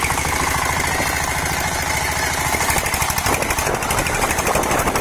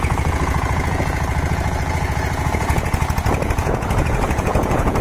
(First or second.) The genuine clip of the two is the first